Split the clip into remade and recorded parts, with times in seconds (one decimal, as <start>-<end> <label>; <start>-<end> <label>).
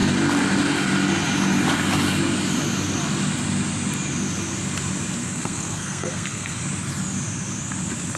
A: 0.0-5.2 recorded; 5.2-6.6 remade; 6.6-8.2 recorded